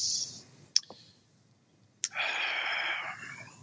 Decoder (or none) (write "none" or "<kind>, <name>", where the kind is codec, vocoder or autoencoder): none